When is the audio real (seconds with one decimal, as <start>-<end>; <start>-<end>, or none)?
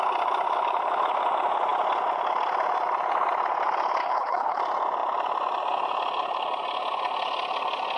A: 0.0-4.0; 4.6-8.0